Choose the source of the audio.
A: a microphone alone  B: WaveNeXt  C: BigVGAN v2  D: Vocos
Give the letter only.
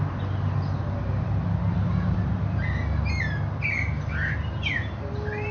A